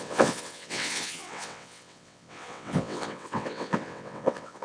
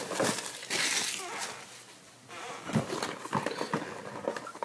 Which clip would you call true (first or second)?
second